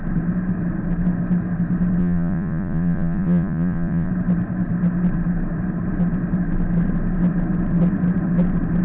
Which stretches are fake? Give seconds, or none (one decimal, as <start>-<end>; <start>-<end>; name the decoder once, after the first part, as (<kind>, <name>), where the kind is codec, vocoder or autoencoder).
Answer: 2.0-4.1 (vocoder, Vocos)